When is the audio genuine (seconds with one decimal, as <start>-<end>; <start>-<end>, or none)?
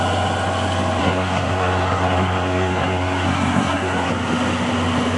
0.0-1.0; 4.1-5.2